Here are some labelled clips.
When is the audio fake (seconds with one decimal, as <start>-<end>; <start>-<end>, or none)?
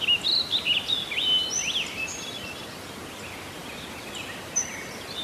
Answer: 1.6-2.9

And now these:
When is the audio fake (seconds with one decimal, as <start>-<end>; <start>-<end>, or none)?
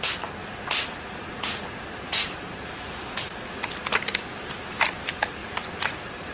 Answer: 0.5-3.7; 5.4-6.3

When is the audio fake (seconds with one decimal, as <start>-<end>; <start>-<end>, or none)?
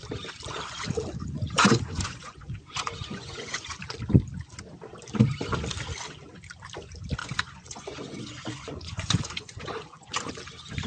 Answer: 1.2-3.8; 7.2-10.3